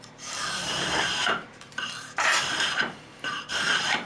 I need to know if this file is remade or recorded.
remade